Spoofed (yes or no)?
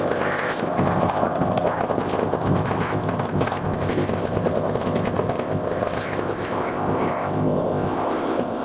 yes